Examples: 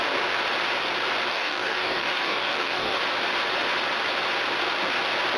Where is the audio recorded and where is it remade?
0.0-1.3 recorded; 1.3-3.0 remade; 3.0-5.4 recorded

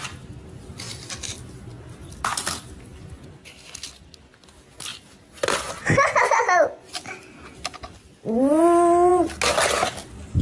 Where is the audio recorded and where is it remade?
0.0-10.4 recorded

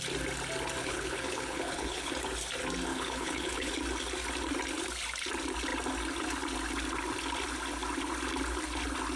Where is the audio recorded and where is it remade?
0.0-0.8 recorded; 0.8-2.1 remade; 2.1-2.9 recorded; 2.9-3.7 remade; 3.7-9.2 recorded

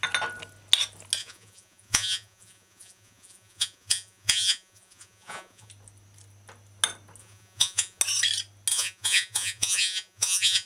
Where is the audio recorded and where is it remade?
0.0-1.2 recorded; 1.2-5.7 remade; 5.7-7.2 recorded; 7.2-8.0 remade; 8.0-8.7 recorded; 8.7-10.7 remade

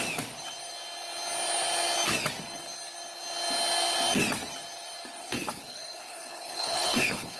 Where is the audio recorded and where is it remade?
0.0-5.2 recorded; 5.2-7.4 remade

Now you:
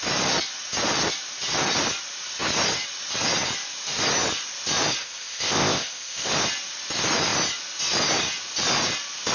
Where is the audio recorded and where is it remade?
0.0-5.0 recorded; 5.0-6.3 remade; 6.3-9.3 recorded

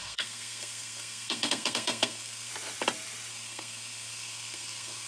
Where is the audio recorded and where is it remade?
0.0-2.5 remade; 2.5-3.3 recorded; 3.3-5.1 remade

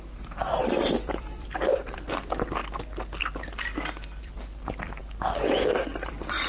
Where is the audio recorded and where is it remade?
0.0-2.6 remade; 2.6-4.2 recorded; 4.2-5.0 remade; 5.0-6.1 recorded; 6.1-6.5 remade